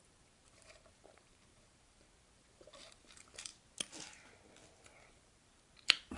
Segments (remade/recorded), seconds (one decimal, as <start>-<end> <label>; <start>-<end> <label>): 0.0-3.5 remade; 3.5-5.1 recorded; 5.1-6.2 remade